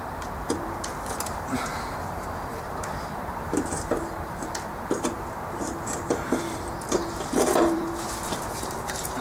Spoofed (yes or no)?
yes